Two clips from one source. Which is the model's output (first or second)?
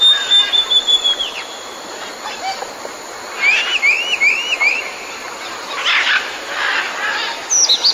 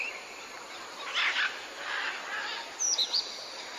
second